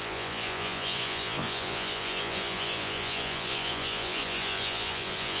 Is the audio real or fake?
fake